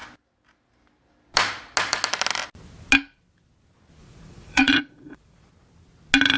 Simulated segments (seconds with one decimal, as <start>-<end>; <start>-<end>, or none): 4.0-5.5

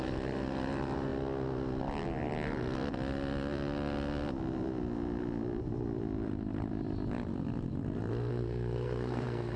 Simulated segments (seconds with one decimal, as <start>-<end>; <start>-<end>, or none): 8.3-9.6

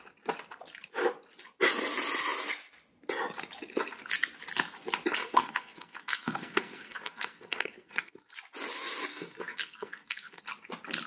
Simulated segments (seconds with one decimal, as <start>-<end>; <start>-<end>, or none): 5.2-8.3; 9.1-10.4

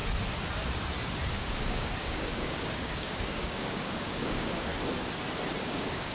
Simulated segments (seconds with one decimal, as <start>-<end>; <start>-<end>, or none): 1.3-4.7; 5.6-6.1

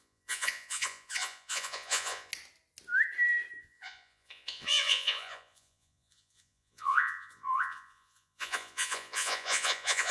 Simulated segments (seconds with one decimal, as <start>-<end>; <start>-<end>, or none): 0.0-2.3; 3.6-10.1

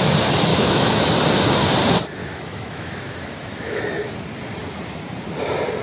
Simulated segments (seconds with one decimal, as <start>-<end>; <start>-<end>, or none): 0.5-1.1; 2.2-3.8